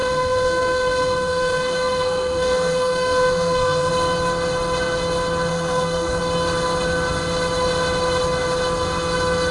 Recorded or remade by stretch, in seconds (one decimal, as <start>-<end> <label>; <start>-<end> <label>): 0.0-3.9 remade; 3.9-5.5 recorded; 5.5-6.2 remade; 6.2-9.5 recorded